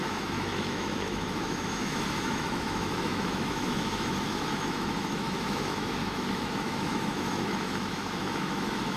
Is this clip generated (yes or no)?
yes